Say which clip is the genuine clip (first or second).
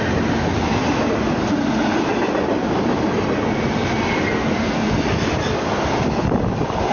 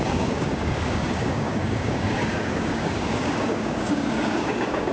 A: first